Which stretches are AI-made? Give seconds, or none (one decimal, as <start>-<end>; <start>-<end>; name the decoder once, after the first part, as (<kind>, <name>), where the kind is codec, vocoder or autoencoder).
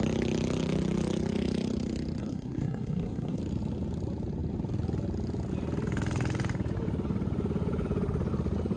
2.2-3.4 (codec, SNAC)